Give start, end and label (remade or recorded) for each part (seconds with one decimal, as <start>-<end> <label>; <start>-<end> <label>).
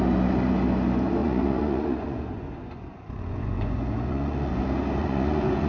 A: 0.0-1.2 recorded; 1.2-4.6 remade; 4.6-5.0 recorded; 5.0-5.7 remade